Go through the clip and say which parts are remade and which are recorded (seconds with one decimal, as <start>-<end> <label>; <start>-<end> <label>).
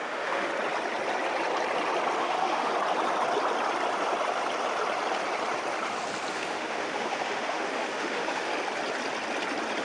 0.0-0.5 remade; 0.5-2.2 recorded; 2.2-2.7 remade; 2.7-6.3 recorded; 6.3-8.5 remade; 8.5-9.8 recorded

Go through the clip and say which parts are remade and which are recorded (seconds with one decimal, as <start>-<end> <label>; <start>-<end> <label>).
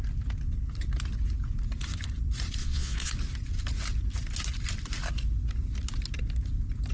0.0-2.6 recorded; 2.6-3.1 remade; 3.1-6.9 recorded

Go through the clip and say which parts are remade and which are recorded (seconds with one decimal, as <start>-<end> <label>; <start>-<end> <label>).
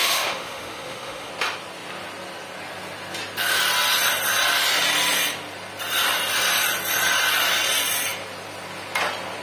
0.0-1.3 remade; 1.3-9.4 recorded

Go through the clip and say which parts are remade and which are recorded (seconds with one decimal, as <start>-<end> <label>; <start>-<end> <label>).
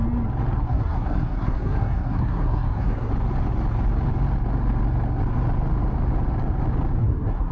0.0-0.6 recorded; 0.6-3.1 remade; 3.1-7.0 recorded; 7.0-7.5 remade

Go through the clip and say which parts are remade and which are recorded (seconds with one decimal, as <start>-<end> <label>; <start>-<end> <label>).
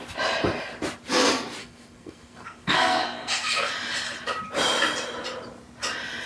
0.0-1.6 recorded; 1.6-3.7 remade; 3.7-6.3 recorded